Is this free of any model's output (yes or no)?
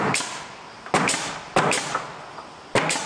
yes